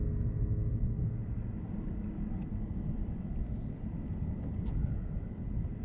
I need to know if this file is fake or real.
real